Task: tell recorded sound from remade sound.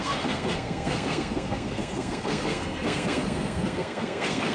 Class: remade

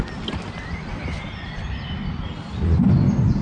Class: recorded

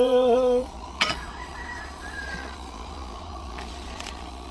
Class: remade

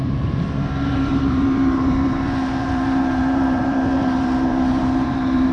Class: remade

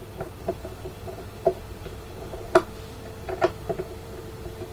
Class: remade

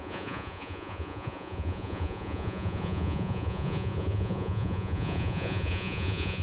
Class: remade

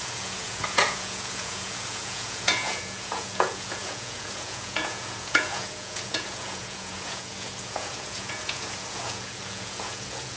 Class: remade